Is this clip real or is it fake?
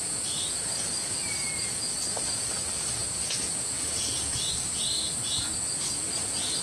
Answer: fake